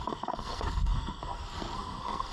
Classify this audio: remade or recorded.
remade